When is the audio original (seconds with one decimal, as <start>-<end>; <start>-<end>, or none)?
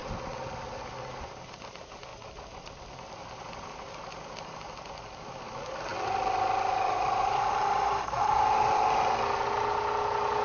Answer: 0.0-10.4